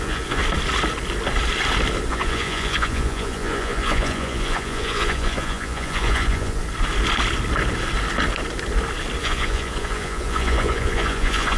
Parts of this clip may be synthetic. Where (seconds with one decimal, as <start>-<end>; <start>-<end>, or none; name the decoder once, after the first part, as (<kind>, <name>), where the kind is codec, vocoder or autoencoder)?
0.0-0.4 (vocoder, Vocos); 2.1-6.6; 9.2-11.6